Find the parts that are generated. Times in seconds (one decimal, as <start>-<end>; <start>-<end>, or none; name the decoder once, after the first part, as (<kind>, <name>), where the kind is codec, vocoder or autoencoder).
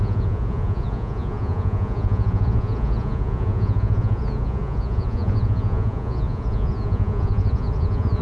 0.0-8.2 (vocoder, Vocos)